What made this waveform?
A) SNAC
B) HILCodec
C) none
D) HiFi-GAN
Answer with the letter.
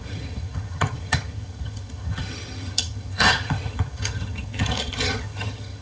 D